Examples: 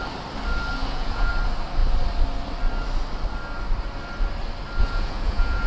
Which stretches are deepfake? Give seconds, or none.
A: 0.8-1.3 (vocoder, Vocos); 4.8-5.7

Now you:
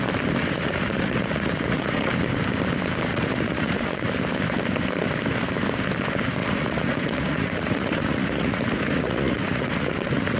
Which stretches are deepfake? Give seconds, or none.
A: 0.4-2.1 (vocoder, Vocos); 3.1-4.1; 6.4-10.4

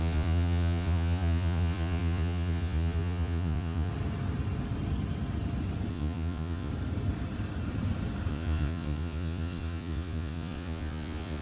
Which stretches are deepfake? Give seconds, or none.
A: 0.0-3.9 (vocoder, Vocos); 5.9-6.7; 8.3-11.4

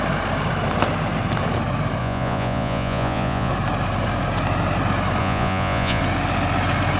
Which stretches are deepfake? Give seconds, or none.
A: 2.0-3.5 (vocoder, Vocos); 5.2-6.0

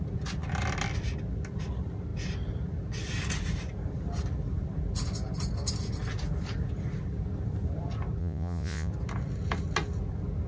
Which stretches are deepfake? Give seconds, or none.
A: 8.2-8.9 (vocoder, Vocos)

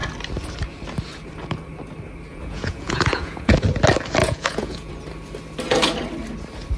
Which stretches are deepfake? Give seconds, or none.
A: 2.3-3.5 (vocoder, Vocos); 4.2-4.9